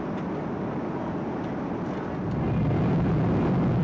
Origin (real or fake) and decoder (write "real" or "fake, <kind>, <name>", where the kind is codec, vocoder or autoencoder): real